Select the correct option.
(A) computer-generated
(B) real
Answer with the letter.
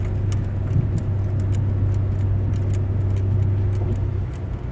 B